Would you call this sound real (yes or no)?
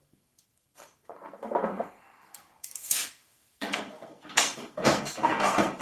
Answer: no